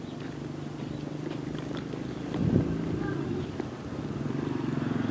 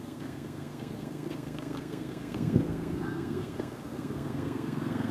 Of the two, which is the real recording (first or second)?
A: first